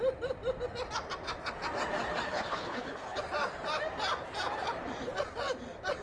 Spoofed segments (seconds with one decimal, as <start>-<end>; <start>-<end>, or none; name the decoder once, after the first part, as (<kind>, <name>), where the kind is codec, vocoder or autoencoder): 2.3-3.2 (codec, HILCodec)